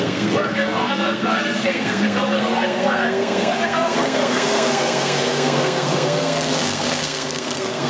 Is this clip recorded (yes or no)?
no